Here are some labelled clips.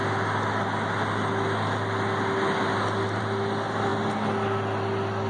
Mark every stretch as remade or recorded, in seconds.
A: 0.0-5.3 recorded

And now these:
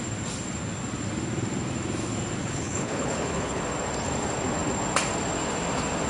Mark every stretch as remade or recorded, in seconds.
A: 0.0-2.4 recorded; 2.4-3.6 remade; 3.6-6.1 recorded